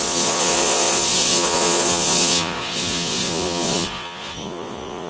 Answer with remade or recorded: remade